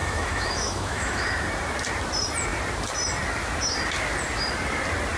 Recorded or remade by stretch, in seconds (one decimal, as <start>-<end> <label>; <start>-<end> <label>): 0.0-1.3 remade; 1.3-5.2 recorded